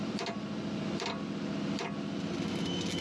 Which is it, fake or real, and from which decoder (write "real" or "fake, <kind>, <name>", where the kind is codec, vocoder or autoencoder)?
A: real